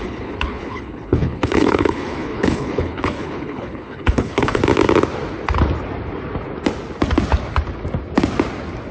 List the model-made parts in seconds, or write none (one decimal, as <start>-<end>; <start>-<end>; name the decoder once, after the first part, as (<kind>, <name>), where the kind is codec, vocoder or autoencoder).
0.0-4.6 (codec, HILCodec)